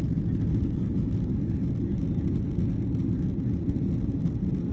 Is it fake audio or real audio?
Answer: real